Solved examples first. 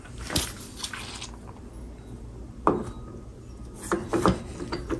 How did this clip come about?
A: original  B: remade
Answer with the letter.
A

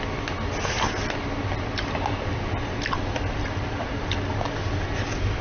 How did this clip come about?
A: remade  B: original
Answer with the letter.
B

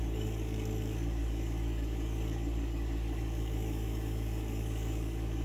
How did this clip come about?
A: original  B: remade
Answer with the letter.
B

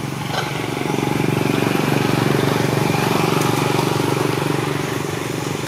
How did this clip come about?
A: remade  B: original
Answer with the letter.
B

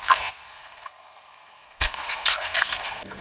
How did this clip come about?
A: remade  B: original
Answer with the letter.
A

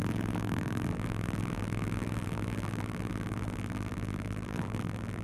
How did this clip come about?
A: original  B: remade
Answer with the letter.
B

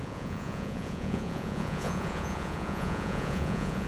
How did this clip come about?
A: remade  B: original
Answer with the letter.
A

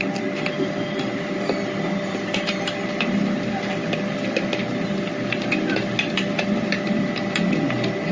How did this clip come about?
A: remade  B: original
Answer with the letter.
B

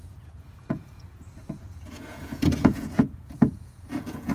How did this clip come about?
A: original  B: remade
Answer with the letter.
B